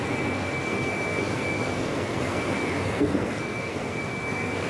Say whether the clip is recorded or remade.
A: remade